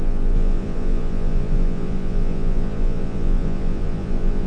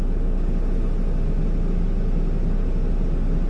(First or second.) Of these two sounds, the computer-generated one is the first